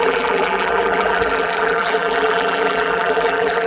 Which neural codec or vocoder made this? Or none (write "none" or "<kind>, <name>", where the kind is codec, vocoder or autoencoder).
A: vocoder, BigVGAN v2